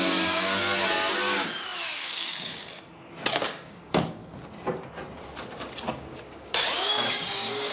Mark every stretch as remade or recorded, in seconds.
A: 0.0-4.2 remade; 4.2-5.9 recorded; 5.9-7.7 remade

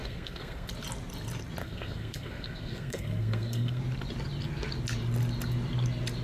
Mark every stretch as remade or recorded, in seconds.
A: 0.0-0.7 remade; 0.7-1.6 recorded; 1.6-3.8 remade; 3.8-6.2 recorded

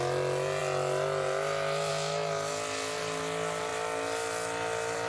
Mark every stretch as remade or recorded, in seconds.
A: 0.0-5.1 recorded

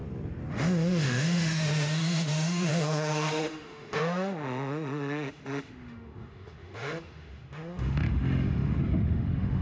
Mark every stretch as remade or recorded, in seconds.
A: 0.0-0.5 recorded; 0.5-9.6 remade